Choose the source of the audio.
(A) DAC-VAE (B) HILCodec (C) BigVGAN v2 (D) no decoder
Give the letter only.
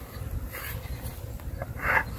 D